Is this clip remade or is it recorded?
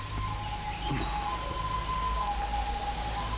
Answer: recorded